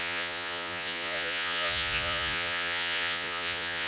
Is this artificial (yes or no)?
yes